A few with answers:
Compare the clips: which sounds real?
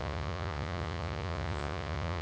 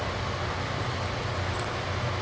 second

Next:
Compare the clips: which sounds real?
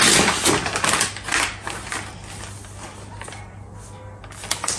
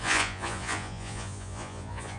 first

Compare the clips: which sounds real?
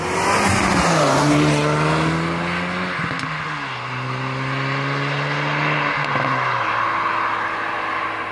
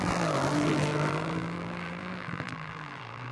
first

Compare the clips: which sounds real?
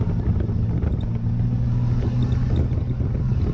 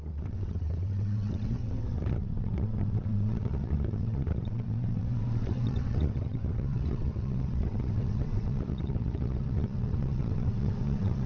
first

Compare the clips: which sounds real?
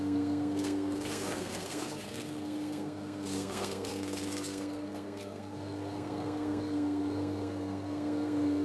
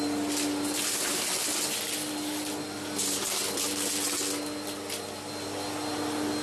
second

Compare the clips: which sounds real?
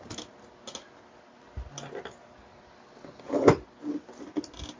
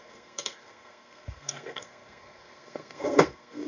first